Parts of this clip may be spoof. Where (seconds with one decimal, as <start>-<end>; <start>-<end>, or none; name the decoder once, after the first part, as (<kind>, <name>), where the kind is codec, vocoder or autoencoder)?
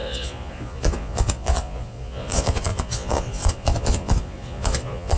0.0-5.2 (vocoder, Vocos)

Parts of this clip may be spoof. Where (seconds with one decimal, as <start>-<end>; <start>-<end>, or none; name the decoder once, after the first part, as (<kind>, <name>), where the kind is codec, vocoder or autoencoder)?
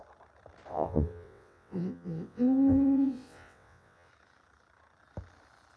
0.7-4.1 (vocoder, WaveNeXt)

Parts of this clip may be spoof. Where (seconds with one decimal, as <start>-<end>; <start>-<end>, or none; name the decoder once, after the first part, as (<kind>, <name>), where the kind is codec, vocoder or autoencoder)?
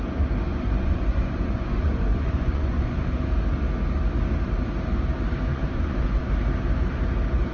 0.5-3.0 (vocoder, Vocos); 5.5-6.3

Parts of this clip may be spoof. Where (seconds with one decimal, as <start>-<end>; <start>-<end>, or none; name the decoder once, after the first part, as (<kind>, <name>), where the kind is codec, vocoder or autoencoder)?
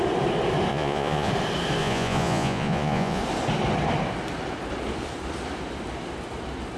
0.7-1.3 (vocoder, Vocos); 1.8-3.2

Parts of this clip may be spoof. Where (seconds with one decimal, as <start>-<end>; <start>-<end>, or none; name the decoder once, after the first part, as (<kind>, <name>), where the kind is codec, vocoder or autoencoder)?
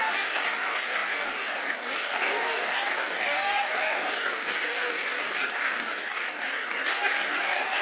0.0-7.8 (codec, DAC)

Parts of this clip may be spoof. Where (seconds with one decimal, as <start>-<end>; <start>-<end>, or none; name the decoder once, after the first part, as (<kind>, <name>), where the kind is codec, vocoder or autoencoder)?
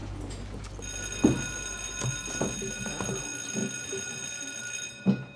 none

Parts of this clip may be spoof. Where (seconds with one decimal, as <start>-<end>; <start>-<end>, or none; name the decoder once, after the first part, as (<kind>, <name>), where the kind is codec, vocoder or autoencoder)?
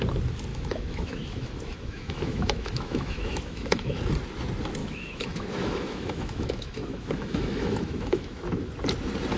0.5-4.0 (autoencoder, DAC-VAE); 4.8-8.7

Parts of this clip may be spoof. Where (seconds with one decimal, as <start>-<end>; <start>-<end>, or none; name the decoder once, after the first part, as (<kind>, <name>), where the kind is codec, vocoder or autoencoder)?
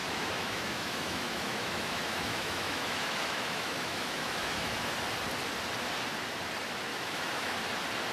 0.0-4.9 (autoencoder, DAC-VAE); 6.9-7.6